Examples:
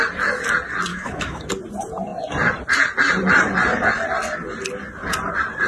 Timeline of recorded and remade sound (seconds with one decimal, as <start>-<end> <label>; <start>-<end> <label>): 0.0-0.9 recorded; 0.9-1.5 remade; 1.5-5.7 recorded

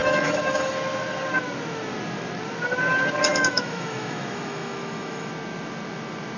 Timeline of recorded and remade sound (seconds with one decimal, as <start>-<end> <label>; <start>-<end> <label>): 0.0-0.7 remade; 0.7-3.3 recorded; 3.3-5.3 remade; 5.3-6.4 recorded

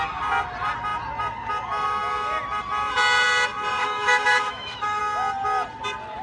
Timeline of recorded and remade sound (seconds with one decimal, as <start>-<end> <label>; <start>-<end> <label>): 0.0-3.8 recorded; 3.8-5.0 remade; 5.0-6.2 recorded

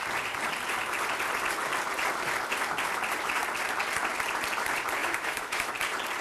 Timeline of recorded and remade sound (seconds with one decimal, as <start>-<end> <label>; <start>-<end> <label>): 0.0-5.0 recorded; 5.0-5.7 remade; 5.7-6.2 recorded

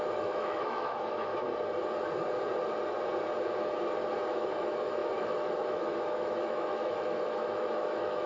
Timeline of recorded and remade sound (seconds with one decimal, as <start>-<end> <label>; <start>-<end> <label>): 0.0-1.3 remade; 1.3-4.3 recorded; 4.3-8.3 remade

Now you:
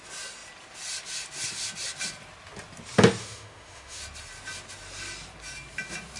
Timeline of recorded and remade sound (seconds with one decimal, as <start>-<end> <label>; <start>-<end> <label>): 0.0-3.2 recorded; 3.2-4.0 remade; 4.0-6.2 recorded

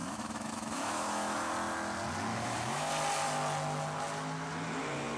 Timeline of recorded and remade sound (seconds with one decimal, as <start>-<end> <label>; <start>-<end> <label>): 0.0-1.5 remade; 1.5-2.3 recorded; 2.3-2.9 remade; 2.9-5.2 recorded

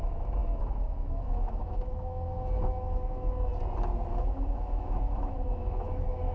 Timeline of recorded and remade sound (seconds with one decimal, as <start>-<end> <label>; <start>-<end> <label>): 0.0-3.5 remade; 3.5-4.1 recorded; 4.1-6.3 remade